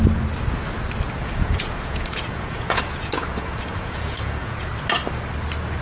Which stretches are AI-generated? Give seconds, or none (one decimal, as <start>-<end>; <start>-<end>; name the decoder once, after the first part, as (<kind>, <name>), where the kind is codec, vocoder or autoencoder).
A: 1.2-4.7 (vocoder, Vocos)